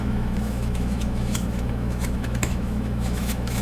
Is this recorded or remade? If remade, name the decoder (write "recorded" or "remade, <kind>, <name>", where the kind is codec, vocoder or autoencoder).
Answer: remade, autoencoder, DAC-VAE